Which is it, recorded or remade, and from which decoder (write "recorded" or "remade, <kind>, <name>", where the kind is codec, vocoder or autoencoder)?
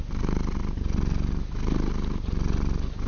recorded